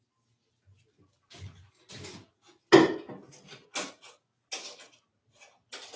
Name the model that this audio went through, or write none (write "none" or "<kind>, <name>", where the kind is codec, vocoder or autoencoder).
none